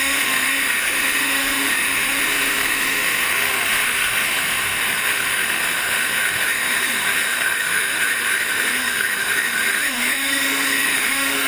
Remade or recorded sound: remade